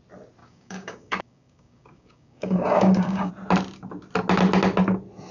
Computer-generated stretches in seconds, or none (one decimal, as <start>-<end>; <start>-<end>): 0.4-3.3